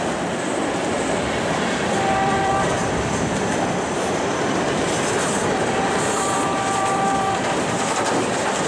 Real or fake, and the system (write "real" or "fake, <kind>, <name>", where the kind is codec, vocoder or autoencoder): fake, vocoder, BigVGAN v2